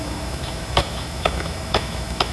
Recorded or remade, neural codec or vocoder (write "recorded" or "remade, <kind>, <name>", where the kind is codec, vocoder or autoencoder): remade, autoencoder, DAC-VAE